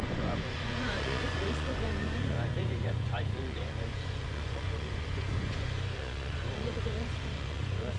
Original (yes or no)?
no